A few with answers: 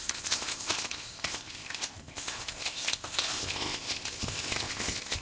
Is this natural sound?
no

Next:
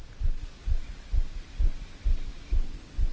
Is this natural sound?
yes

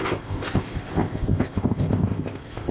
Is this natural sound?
no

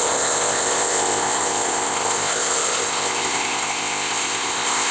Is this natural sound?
no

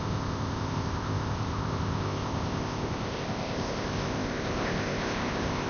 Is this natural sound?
no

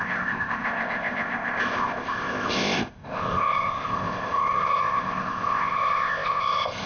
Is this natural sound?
no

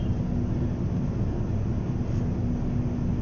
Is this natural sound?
yes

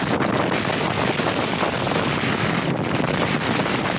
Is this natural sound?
yes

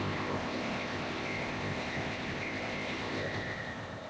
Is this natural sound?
no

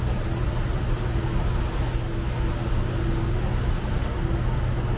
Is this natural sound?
yes